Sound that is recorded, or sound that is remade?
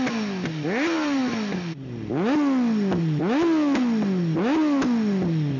recorded